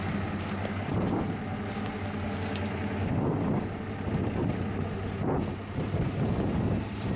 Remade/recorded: recorded